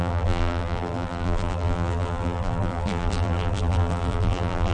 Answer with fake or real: fake